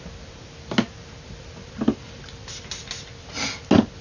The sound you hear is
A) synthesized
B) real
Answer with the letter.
B